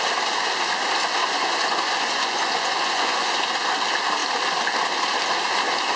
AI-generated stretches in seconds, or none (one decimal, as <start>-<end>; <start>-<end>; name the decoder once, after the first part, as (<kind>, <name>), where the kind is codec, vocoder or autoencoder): 1.2-3.3 (vocoder, Vocos)